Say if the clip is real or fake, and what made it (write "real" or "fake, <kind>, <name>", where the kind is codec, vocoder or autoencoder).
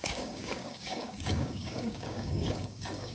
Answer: fake, codec, DAC